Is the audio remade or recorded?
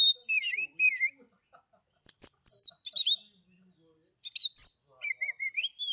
recorded